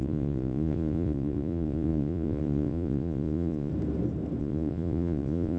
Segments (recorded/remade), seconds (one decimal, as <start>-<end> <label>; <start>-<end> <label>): 0.0-3.7 remade; 3.7-4.4 recorded; 4.4-5.6 remade